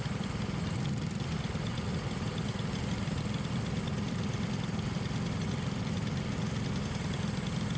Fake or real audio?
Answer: real